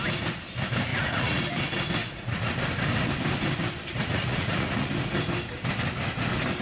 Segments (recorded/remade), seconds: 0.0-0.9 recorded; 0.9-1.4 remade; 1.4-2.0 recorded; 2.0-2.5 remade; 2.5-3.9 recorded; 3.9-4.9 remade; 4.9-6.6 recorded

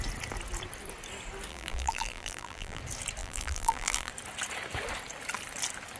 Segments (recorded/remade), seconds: 0.0-1.5 recorded; 1.5-2.8 remade; 2.8-3.2 recorded; 3.2-4.1 remade; 4.1-6.0 recorded